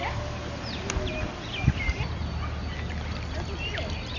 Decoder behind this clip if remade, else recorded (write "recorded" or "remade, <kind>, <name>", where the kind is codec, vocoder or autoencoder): recorded